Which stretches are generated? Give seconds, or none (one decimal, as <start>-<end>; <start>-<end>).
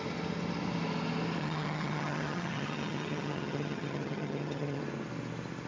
1.4-4.8